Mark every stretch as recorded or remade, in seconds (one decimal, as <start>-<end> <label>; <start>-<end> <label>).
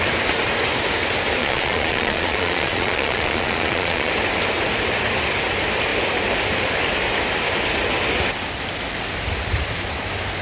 0.0-1.4 recorded; 1.4-4.1 remade; 4.1-10.4 recorded